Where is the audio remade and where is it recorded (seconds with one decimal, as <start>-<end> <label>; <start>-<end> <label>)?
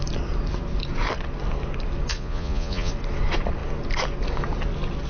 0.0-2.1 recorded; 2.1-2.9 remade; 2.9-5.1 recorded